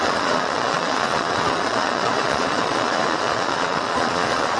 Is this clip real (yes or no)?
no